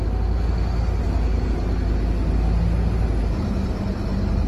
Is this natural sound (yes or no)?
yes